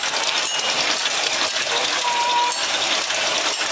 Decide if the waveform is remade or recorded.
recorded